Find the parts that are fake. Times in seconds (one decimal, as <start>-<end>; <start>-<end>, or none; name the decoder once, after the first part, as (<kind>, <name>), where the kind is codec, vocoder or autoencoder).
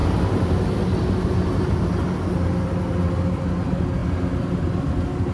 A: none